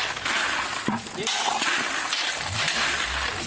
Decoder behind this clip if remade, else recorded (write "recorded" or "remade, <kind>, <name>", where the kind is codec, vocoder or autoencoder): recorded